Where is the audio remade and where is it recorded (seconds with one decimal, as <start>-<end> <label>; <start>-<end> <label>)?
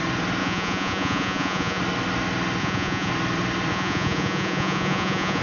0.0-0.4 recorded; 0.4-1.8 remade; 1.8-2.6 recorded; 2.6-3.1 remade; 3.1-3.7 recorded; 3.7-5.4 remade